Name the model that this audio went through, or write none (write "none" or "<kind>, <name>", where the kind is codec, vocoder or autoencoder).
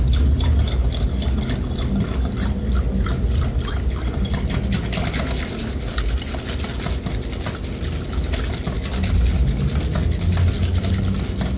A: none